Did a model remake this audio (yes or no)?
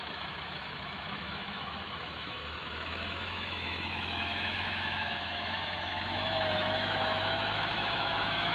yes